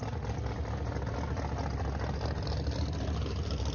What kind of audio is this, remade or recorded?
recorded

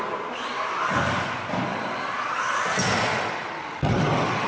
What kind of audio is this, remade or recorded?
recorded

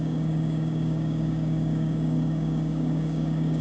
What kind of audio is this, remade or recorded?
remade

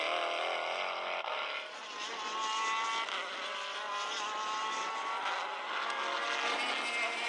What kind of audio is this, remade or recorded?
recorded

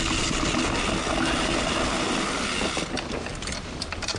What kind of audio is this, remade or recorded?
recorded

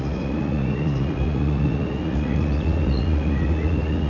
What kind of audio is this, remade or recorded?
remade